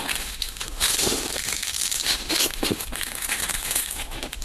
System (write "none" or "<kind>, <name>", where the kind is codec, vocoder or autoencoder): autoencoder, DAC-VAE